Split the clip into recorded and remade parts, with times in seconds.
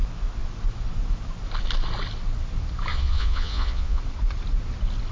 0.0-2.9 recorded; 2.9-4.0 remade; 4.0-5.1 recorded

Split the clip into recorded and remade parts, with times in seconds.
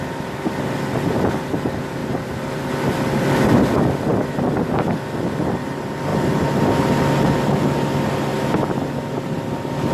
0.0-2.0 recorded; 2.0-2.7 remade; 2.7-9.9 recorded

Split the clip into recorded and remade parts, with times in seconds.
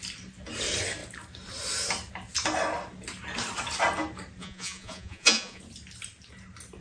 0.0-4.4 recorded; 4.4-5.6 remade; 5.6-6.8 recorded